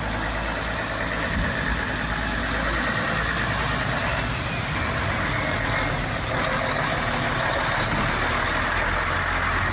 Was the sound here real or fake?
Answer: real